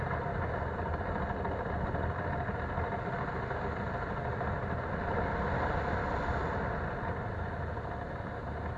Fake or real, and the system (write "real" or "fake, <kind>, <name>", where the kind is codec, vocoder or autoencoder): real